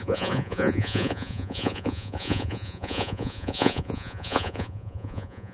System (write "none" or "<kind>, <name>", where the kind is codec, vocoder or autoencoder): vocoder, Vocos